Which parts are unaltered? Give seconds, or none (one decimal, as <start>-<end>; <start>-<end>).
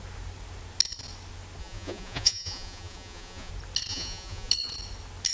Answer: 0.0-1.6; 3.5-3.9; 4.5-5.3